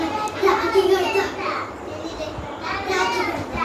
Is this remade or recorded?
recorded